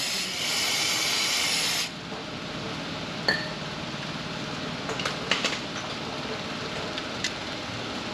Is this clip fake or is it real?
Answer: real